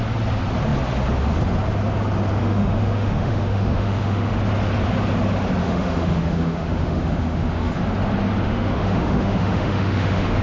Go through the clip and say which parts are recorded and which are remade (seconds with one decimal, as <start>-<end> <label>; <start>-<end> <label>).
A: 0.0-2.4 recorded; 2.4-4.3 remade; 4.3-5.6 recorded; 5.6-7.8 remade; 7.8-8.4 recorded; 8.4-10.4 remade